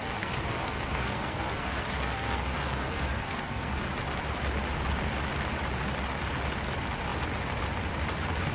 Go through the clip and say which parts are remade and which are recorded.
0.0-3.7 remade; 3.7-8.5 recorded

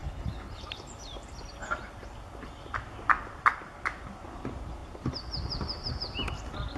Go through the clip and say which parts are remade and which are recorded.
0.0-0.6 remade; 0.6-6.8 recorded

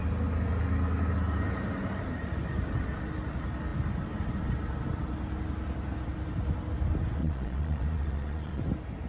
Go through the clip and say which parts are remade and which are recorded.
0.0-7.2 recorded; 7.2-8.6 remade; 8.6-9.1 recorded

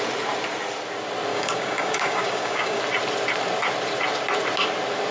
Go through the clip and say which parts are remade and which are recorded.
0.0-1.3 recorded; 1.3-2.8 remade; 2.8-5.1 recorded

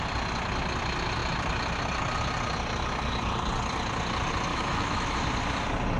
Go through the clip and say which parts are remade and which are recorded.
0.0-4.5 recorded; 4.5-5.1 remade; 5.1-6.0 recorded